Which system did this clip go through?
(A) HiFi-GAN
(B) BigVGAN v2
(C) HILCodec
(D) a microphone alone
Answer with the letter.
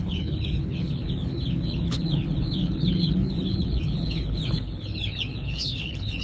C